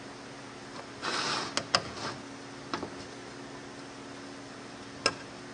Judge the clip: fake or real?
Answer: real